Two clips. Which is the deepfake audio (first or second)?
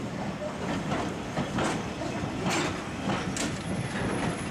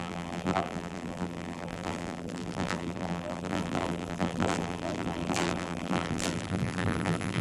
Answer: second